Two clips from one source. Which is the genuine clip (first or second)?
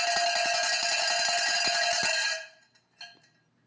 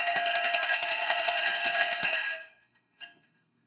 first